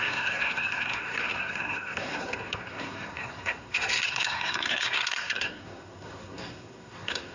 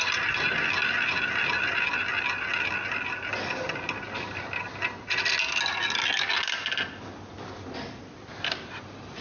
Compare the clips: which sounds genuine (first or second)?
second